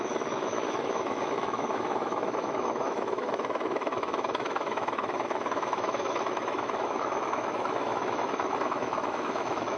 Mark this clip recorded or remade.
remade